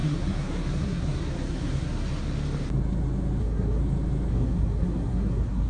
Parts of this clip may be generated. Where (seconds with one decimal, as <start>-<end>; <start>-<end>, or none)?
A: 0.0-2.2; 3.4-3.8; 4.3-5.7